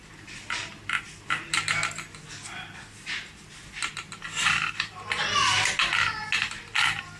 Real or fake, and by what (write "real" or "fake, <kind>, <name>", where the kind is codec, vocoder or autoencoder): real